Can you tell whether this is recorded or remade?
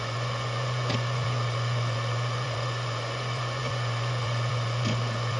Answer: remade